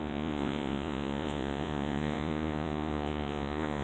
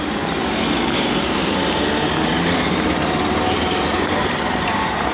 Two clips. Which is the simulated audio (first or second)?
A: first